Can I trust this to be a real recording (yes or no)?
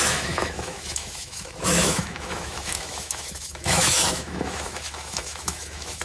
no